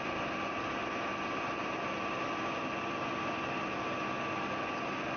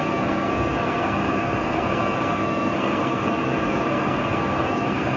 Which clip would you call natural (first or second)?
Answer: first